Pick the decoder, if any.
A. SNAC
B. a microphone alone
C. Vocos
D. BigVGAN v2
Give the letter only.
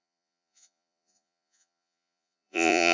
C